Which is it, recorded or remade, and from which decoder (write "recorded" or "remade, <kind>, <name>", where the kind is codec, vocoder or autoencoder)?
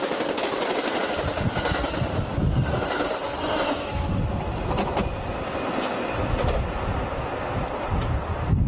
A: recorded